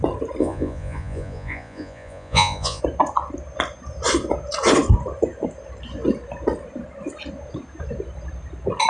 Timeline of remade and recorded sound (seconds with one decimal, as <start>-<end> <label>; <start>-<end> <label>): 0.0-0.4 recorded; 0.4-2.8 remade; 2.8-8.9 recorded